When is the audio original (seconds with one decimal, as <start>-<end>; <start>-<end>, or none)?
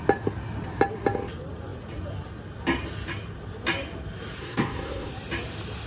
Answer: 0.0-4.4; 5.1-5.9